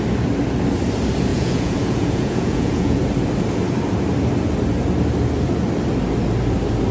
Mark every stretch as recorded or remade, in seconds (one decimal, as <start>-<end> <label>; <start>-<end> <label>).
0.0-1.3 recorded; 1.3-3.0 remade; 3.0-6.9 recorded